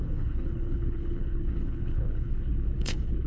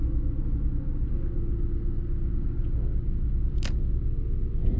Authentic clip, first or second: second